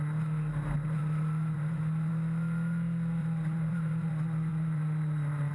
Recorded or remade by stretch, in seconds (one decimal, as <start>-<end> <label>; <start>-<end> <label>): 0.0-1.0 recorded; 1.0-2.1 remade; 2.1-3.2 recorded; 3.2-4.1 remade; 4.1-4.5 recorded; 4.5-5.5 remade